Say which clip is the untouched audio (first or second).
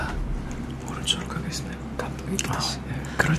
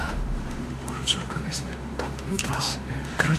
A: first